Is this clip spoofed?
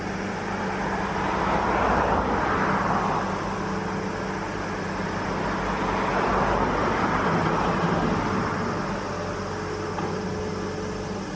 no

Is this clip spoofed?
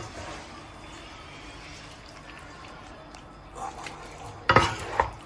no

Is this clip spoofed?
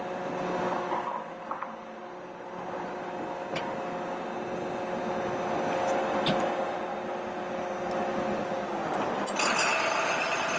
no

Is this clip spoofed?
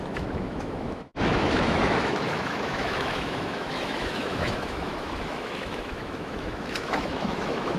yes